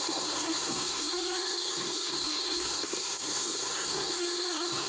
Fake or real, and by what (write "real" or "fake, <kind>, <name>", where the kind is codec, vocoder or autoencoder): fake, codec, SNAC